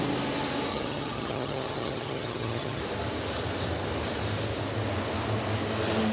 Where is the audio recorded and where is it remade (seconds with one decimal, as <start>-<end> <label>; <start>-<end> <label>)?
0.0-0.7 recorded; 0.7-2.8 remade; 2.8-6.1 recorded